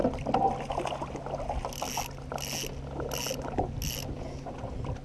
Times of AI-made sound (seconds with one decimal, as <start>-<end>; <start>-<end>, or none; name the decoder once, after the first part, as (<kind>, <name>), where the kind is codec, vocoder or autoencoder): none